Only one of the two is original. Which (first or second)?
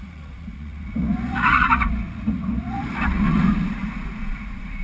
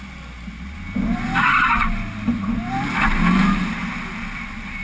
second